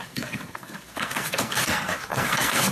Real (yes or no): no